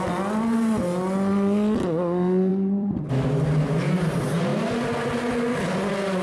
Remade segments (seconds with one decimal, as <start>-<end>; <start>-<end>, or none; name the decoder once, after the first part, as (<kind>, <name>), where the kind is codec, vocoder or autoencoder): 2.5-3.1 (vocoder, BigVGAN v2)